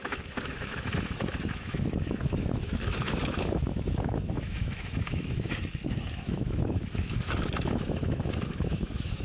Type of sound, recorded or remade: remade